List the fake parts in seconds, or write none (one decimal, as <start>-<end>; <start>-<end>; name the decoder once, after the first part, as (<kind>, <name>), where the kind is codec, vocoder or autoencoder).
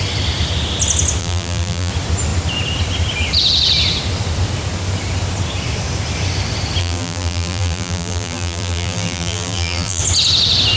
1.2-1.9 (vocoder, BigVGAN v2); 6.8-10.0